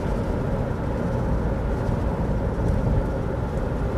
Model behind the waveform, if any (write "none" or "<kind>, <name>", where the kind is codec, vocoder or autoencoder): none